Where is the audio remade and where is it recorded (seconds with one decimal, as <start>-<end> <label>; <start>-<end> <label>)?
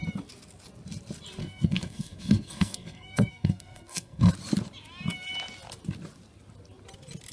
0.0-1.4 recorded; 1.4-4.3 remade; 4.3-7.3 recorded